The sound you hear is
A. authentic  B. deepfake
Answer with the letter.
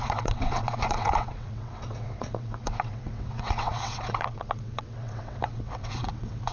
B